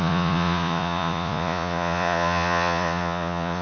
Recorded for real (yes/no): no